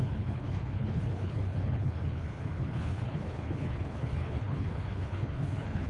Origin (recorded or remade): remade